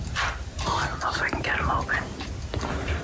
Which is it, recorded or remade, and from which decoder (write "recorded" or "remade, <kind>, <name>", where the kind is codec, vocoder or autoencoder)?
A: recorded